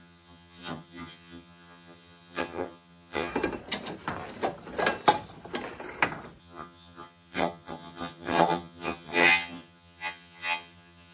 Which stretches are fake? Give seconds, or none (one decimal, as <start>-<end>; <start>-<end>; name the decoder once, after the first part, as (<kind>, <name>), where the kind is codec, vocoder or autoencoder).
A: 0.0-3.3 (vocoder, HiFi-GAN); 6.4-11.1